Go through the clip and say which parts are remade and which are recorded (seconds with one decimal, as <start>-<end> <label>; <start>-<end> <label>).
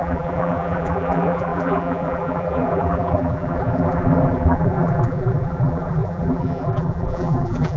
0.0-7.8 remade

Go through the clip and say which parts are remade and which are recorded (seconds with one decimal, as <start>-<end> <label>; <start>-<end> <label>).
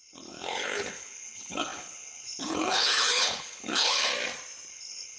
0.0-4.1 remade; 4.1-4.7 recorded; 4.7-5.2 remade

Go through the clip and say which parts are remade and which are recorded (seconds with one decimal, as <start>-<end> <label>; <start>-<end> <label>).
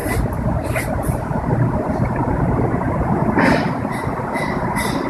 0.0-5.1 recorded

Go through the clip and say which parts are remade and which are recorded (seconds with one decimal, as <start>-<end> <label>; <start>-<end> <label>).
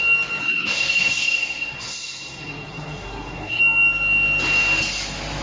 0.0-0.4 recorded; 0.4-3.6 remade; 3.6-5.4 recorded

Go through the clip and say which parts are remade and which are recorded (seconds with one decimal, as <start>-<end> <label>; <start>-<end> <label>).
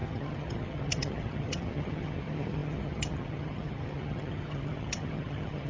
0.0-5.7 remade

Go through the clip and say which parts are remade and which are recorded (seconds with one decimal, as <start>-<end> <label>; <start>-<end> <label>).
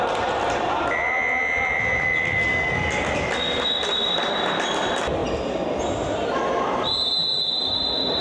0.0-2.5 recorded; 2.5-3.1 remade; 3.1-8.2 recorded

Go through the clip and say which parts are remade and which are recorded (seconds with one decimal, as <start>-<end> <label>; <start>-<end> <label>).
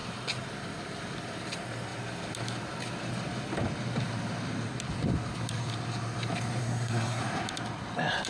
0.0-6.6 recorded; 6.6-7.2 remade; 7.2-8.3 recorded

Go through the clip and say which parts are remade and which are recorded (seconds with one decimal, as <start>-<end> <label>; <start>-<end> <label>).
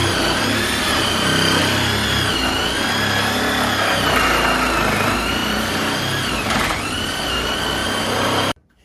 0.0-1.6 remade; 1.6-5.4 recorded; 5.4-6.8 remade; 6.8-7.8 recorded; 7.8-8.8 remade